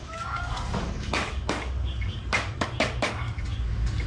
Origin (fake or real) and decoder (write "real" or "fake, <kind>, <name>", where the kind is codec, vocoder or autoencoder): fake, codec, DAC